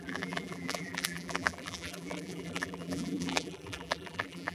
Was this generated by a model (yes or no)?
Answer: yes